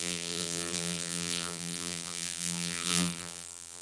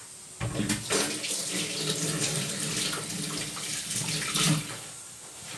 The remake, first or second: first